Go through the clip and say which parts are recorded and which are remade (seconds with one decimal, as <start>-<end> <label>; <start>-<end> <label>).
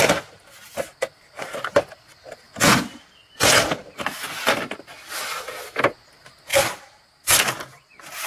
0.0-8.3 recorded